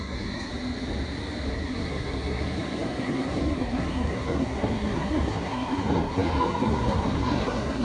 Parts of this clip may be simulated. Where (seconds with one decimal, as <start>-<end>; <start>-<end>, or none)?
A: 0.0-0.5; 1.5-7.8